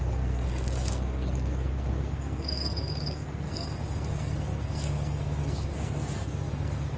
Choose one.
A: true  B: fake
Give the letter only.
B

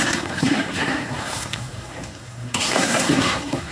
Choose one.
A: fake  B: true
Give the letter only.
A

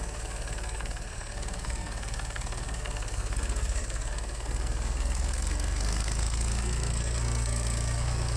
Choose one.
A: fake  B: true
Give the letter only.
A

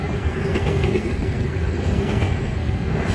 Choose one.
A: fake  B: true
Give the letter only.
A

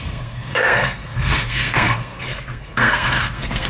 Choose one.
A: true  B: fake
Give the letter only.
B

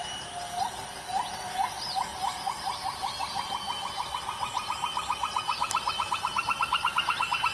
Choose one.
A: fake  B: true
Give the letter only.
B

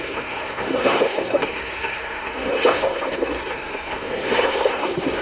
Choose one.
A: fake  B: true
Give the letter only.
A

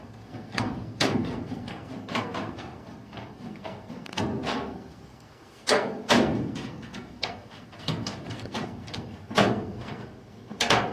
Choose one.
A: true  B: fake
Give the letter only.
B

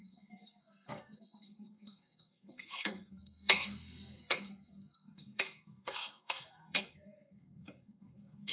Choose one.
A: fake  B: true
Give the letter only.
A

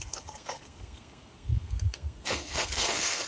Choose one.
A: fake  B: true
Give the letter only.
A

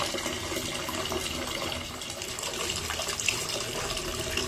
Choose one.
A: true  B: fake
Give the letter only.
A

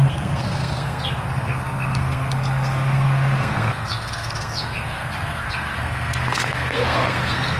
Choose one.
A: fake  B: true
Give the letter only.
A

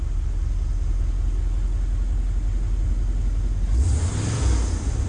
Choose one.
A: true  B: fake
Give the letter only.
A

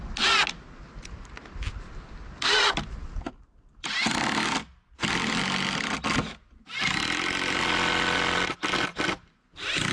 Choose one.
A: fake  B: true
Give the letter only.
B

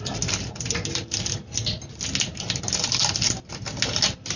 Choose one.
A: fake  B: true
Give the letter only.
B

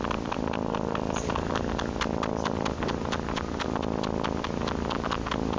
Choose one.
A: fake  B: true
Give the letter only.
B